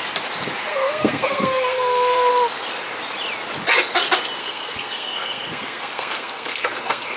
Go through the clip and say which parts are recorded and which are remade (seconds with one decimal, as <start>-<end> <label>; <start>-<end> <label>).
0.0-0.7 recorded; 0.7-2.3 remade; 2.3-4.4 recorded; 4.4-7.2 remade